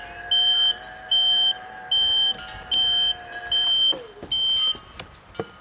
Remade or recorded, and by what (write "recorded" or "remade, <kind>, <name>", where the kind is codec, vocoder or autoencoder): recorded